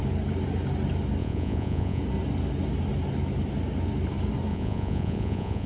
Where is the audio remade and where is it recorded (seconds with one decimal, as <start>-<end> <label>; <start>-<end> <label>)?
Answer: 0.0-1.2 recorded; 1.2-2.0 remade; 2.0-4.5 recorded; 4.5-5.7 remade